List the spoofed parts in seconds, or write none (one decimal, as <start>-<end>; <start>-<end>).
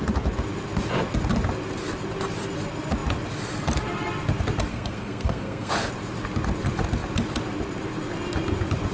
4.7-5.7